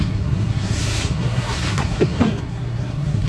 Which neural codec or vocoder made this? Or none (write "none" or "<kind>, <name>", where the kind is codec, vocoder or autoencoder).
codec, SNAC